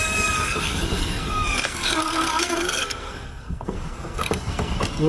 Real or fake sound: fake